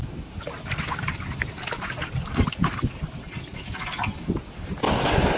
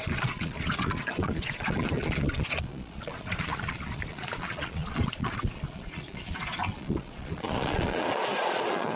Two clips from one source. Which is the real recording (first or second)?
first